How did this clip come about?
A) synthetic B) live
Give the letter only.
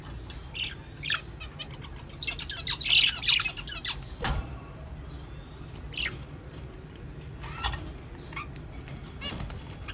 B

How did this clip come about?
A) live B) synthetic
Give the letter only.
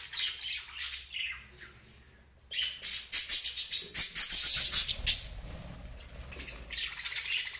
A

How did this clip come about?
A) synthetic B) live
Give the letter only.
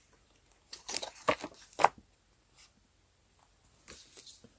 B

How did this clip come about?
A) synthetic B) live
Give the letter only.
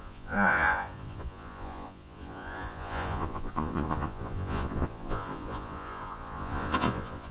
A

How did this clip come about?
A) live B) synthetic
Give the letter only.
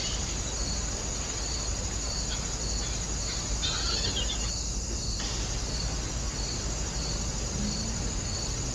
A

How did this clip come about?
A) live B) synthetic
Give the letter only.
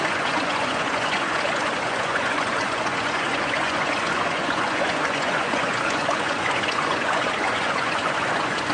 B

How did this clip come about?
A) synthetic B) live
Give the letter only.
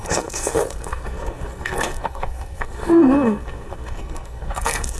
A